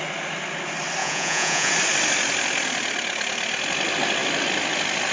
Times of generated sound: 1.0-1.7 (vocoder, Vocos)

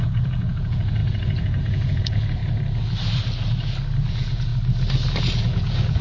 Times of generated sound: 0.0-2.4 (vocoder, Vocos); 4.1-4.5; 5.2-6.0

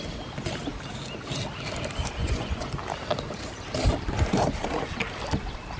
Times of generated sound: 2.2-2.7 (vocoder, Vocos)

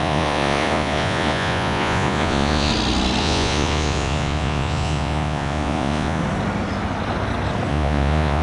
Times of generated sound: 0.0-2.7 (vocoder, Vocos); 3.2-6.2; 7.7-8.4

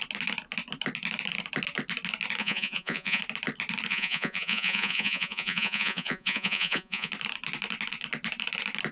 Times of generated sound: 2.4-3.2 (vocoder, Vocos); 3.9-7.1

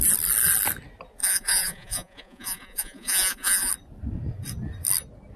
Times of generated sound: 1.2-3.7 (vocoder, Vocos)

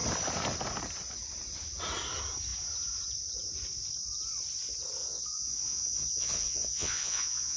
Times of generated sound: 5.0-7.6 (vocoder, Vocos)